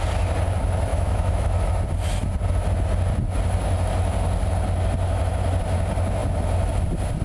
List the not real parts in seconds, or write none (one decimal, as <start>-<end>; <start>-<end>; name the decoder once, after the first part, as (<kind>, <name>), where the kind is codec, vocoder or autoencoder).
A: 0.9-1.7 (autoencoder, DAC-VAE)